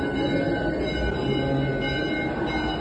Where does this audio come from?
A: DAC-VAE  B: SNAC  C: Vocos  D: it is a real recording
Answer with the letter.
D